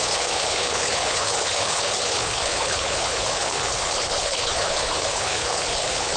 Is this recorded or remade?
remade